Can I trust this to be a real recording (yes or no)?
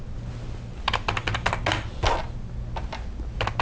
yes